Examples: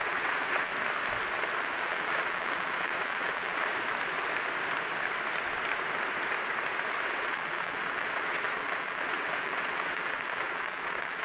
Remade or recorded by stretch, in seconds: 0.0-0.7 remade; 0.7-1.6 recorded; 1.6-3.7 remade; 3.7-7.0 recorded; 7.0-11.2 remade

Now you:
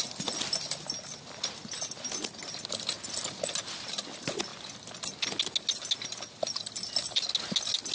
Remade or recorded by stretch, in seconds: 0.0-7.9 recorded

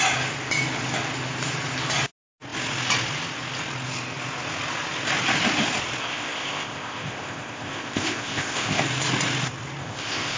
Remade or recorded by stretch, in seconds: 0.0-6.0 recorded; 6.0-8.8 remade; 8.8-9.8 recorded; 9.8-10.4 remade

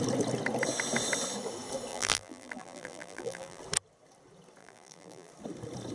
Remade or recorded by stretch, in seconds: 0.0-1.9 recorded; 1.9-3.6 remade; 3.6-4.6 recorded; 4.6-5.3 remade; 5.3-5.9 recorded

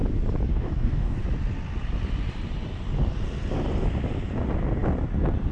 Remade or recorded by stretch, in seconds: 0.0-0.5 recorded; 0.5-1.2 remade; 1.2-5.5 recorded

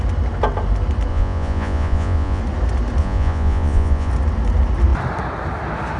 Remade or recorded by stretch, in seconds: 0.0-1.1 recorded; 1.1-2.4 remade; 2.4-3.0 recorded; 3.0-4.1 remade; 4.1-6.0 recorded

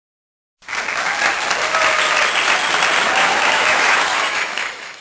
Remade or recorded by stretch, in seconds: 0.0-3.0 recorded; 3.0-5.0 remade

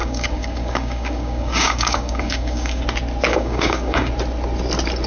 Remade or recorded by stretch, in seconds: 0.0-2.8 remade; 2.8-3.3 recorded; 3.3-4.1 remade; 4.1-5.1 recorded